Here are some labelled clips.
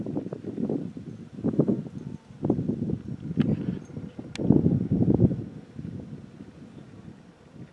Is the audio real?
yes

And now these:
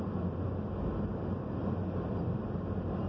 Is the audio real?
yes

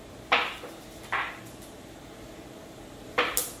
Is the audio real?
yes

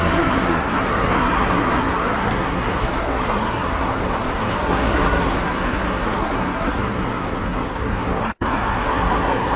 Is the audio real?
no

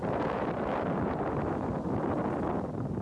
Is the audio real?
yes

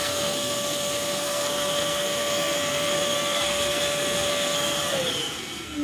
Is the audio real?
no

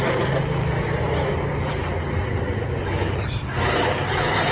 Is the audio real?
yes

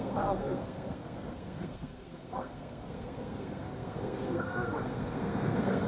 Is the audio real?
no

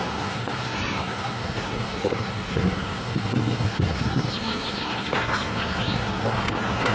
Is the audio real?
no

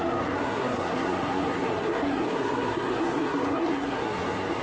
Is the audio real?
no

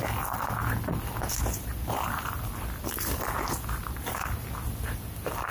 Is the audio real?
yes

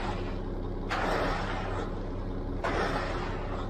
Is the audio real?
yes